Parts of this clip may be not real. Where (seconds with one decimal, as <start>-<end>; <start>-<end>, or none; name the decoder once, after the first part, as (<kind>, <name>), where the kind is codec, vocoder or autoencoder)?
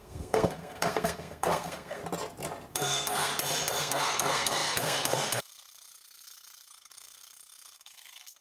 0.0-2.0 (codec, SNAC); 2.7-3.3; 3.8-8.4